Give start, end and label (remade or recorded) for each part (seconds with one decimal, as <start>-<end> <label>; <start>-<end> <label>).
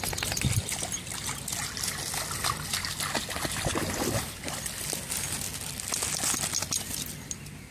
0.0-7.7 recorded